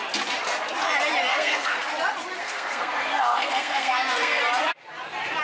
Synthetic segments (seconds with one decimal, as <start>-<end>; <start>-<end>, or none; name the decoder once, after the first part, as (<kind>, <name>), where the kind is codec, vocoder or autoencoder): 1.3-1.9 (codec, SNAC); 2.4-4.4